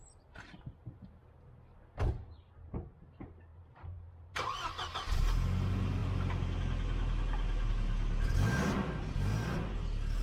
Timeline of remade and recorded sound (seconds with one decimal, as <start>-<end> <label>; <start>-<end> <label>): 0.0-3.5 recorded; 3.5-4.6 remade; 4.6-10.2 recorded